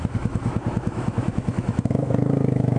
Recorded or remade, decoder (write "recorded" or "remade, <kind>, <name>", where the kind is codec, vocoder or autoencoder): remade, autoencoder, DAC-VAE